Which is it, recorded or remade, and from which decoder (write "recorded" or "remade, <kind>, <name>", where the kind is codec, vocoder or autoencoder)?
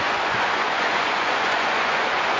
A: remade, vocoder, Vocos